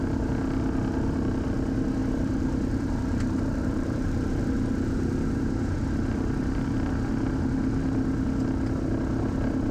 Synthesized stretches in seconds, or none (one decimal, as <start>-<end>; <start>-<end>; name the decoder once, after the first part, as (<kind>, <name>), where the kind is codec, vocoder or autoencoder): 2.0-4.4 (vocoder, BigVGAN v2)